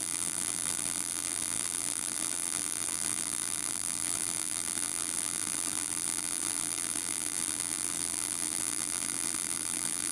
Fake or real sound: fake